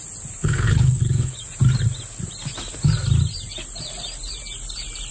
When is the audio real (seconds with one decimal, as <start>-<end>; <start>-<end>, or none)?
0.0-0.4; 1.4-5.1